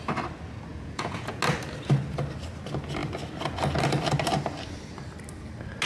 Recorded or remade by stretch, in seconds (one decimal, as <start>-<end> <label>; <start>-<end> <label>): 0.0-0.7 recorded; 0.7-1.4 remade; 1.4-5.9 recorded

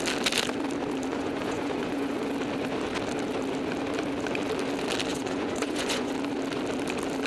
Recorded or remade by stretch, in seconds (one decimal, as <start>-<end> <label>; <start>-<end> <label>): 0.0-1.1 recorded; 1.1-2.2 remade; 2.2-5.1 recorded; 5.1-6.1 remade; 6.1-7.3 recorded